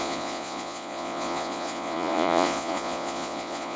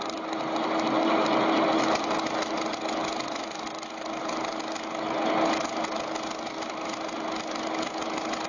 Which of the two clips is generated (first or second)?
first